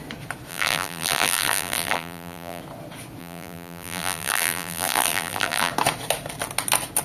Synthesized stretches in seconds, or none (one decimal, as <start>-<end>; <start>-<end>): 0.5-2.6; 3.2-5.7